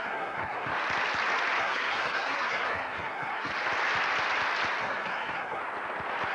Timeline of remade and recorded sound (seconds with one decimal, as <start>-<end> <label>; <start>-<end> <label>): 0.0-0.7 remade; 0.7-1.6 recorded; 1.6-3.5 remade; 3.5-4.8 recorded; 4.8-5.6 remade; 5.6-6.3 recorded